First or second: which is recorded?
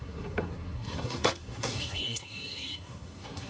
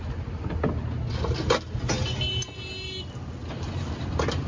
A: second